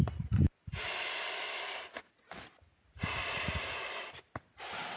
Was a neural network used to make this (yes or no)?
no